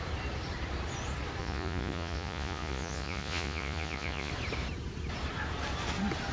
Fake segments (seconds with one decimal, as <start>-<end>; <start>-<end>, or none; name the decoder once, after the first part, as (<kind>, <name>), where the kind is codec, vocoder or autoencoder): 1.4-4.3 (vocoder, Vocos)